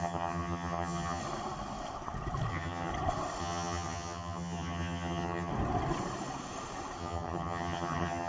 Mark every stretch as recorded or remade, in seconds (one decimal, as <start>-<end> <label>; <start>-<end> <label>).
0.0-1.2 remade; 1.2-2.5 recorded; 2.5-2.9 remade; 2.9-3.4 recorded; 3.4-5.5 remade; 5.5-7.0 recorded; 7.0-8.3 remade